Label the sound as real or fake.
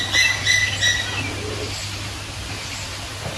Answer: real